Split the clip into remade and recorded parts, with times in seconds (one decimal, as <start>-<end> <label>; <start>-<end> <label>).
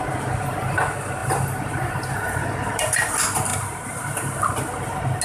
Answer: 0.0-1.2 recorded; 1.2-3.1 remade; 3.1-3.5 recorded; 3.5-5.2 remade